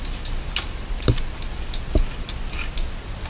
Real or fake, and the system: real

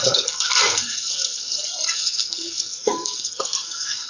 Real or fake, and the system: fake, codec, SNAC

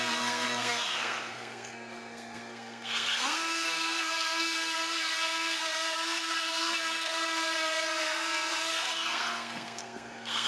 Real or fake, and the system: fake, codec, SNAC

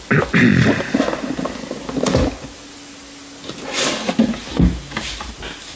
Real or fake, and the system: real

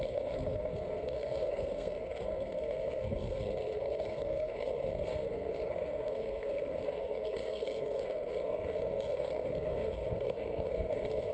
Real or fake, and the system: fake, codec, SNAC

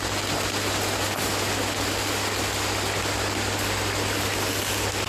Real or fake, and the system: real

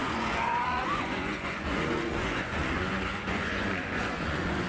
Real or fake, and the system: fake, vocoder, Vocos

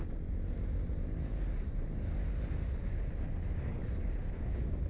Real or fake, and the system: real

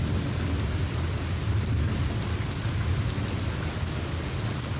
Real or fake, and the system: real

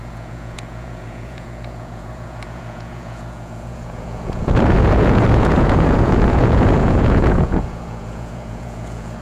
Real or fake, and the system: fake, vocoder, Vocos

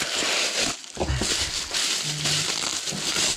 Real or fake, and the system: real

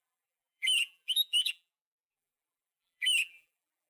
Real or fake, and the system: fake, vocoder, BigVGAN v2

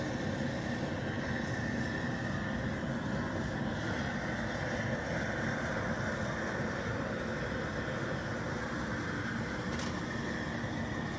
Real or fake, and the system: real